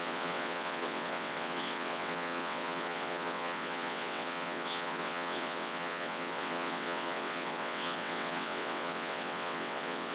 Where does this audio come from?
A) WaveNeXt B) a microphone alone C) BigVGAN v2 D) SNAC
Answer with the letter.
A